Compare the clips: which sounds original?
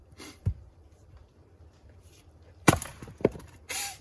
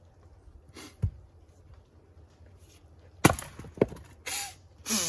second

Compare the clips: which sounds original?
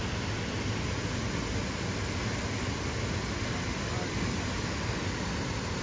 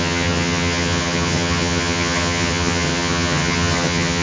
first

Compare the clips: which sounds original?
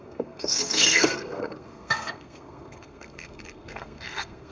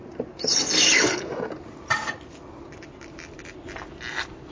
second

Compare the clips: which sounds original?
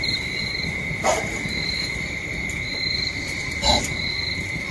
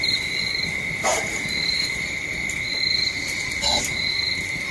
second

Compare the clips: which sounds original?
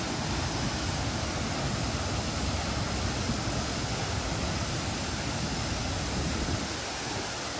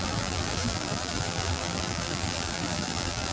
first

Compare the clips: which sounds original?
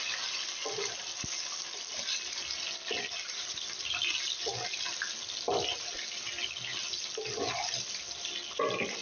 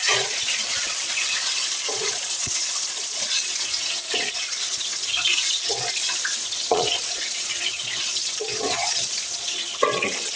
first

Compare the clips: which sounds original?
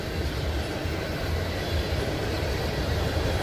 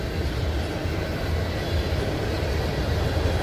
second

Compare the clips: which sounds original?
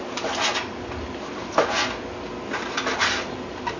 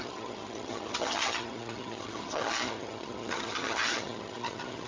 first